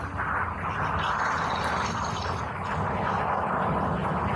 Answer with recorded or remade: recorded